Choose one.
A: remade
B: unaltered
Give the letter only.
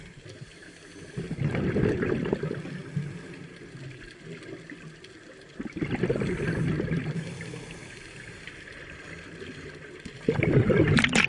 B